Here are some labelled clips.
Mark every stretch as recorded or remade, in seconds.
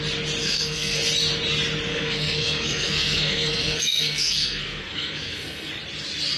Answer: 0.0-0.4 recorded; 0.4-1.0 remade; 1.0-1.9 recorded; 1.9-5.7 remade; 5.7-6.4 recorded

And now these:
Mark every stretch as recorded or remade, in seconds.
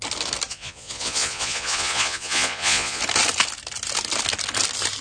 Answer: 0.0-0.5 recorded; 0.5-3.0 remade; 3.0-5.0 recorded